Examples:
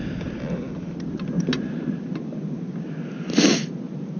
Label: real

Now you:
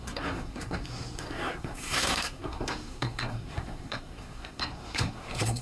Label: fake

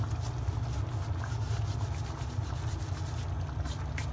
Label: real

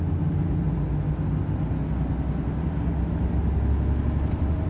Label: real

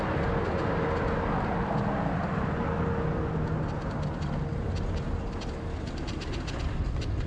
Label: real